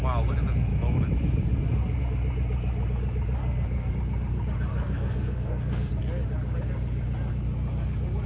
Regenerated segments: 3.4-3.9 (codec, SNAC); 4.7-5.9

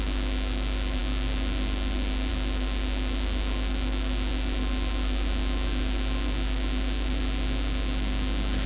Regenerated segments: none

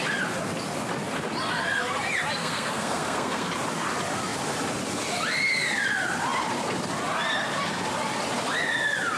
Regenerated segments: 2.4-3.5 (codec, SNAC)